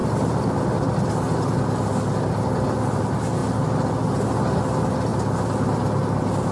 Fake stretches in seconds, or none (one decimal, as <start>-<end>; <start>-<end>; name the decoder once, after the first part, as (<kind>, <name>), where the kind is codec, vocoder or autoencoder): 0.0-0.6 (vocoder, BigVGAN v2)

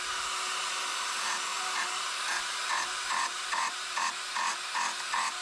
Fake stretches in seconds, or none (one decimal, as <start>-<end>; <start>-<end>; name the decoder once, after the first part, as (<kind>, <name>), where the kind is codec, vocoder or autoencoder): 1.5-4.7 (vocoder, BigVGAN v2)

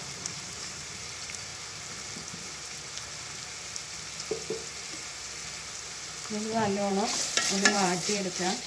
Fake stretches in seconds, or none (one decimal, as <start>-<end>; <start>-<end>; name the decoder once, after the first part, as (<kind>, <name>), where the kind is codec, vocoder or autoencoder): 0.0-1.5 (vocoder, BigVGAN v2); 6.7-8.7

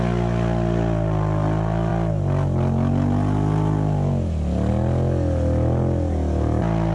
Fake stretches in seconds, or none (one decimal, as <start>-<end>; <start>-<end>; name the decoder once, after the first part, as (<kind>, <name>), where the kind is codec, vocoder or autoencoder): none

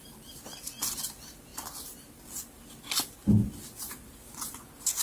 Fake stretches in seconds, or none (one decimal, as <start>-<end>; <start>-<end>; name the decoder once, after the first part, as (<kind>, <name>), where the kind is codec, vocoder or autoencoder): none